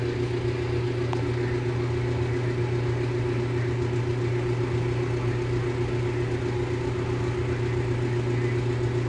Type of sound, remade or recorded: recorded